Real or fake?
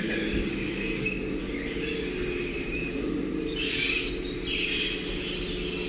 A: real